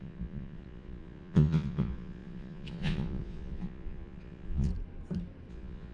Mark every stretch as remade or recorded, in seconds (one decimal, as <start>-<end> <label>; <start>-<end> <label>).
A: 0.0-4.7 remade; 4.7-5.5 recorded; 5.5-5.9 remade